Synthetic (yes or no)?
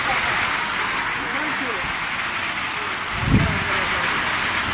no